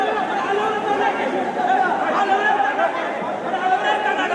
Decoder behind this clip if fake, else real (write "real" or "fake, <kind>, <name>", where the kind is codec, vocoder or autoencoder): real